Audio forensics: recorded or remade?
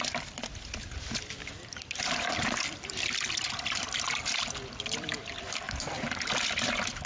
remade